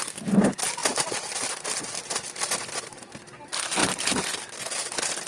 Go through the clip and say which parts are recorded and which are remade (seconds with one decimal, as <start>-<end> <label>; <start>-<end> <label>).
0.0-5.3 remade